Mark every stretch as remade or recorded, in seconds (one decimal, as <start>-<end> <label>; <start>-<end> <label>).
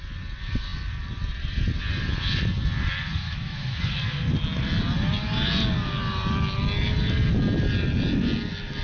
0.0-3.2 recorded; 3.2-3.8 remade; 3.8-8.8 recorded